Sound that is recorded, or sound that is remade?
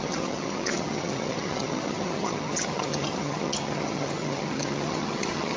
remade